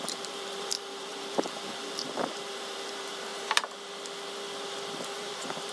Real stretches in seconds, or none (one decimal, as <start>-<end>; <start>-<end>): 3.3-5.2